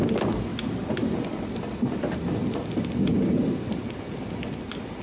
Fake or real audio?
real